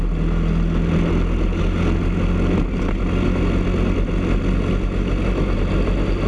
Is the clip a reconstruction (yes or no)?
no